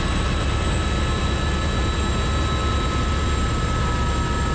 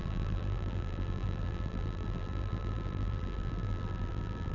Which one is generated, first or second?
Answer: second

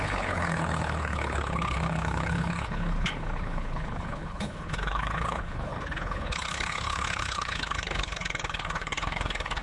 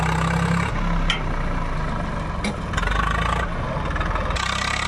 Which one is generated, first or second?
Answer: first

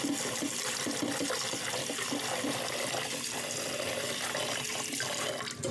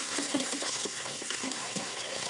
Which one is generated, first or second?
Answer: second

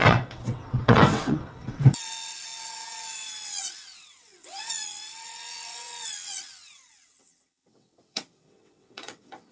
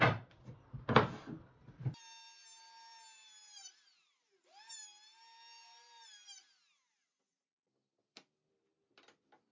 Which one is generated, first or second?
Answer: first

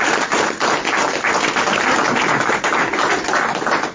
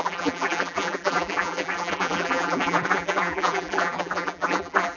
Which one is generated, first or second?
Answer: second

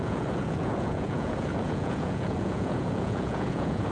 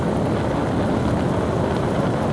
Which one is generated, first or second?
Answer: first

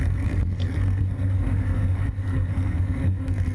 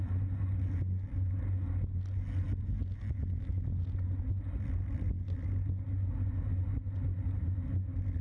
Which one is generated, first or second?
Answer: first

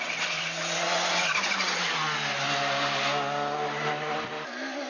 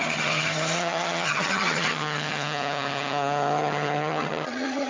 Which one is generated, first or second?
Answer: second